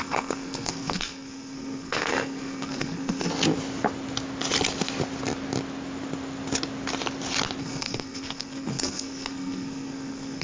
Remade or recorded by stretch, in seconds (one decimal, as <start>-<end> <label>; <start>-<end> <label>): 0.0-3.3 remade; 3.3-7.6 recorded; 7.6-10.4 remade